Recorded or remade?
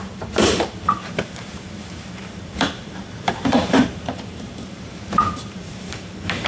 remade